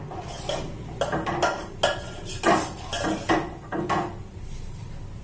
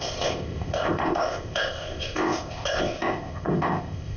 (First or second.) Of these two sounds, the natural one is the first